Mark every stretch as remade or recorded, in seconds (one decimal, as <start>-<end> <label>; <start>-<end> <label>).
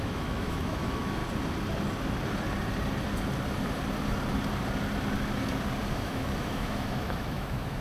0.0-1.2 remade; 1.2-5.9 recorded; 5.9-7.8 remade